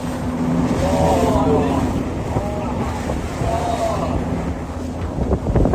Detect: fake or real real